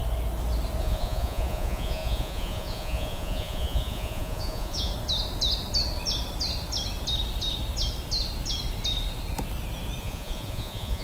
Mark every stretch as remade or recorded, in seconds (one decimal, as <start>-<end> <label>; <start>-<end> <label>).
0.0-0.8 recorded; 0.8-4.9 remade; 4.9-10.0 recorded; 10.0-11.0 remade